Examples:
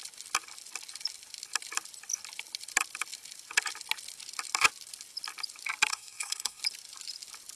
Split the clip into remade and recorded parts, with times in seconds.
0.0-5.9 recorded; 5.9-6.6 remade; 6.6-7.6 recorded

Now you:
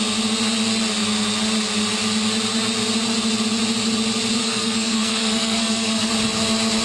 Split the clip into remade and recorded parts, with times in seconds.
0.0-4.4 recorded; 4.4-6.1 remade; 6.1-6.8 recorded

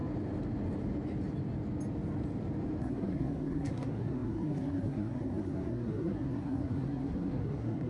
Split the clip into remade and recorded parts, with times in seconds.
0.0-2.8 recorded; 2.8-7.9 remade